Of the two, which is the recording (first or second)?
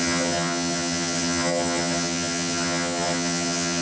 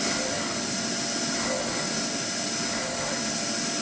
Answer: second